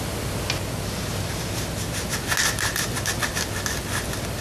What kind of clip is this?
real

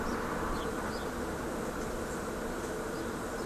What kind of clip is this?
real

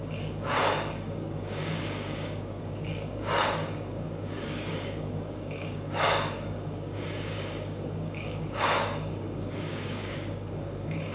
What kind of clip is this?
fake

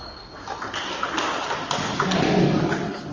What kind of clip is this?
real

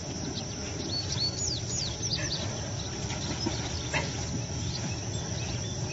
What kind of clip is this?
real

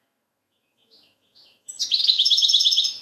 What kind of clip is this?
fake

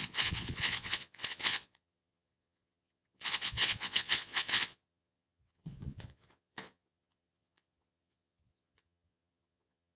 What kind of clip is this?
fake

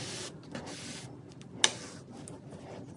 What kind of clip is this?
real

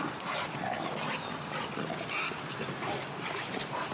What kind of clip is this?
real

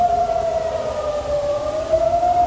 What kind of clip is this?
real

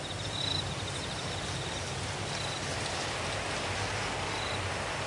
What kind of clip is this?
real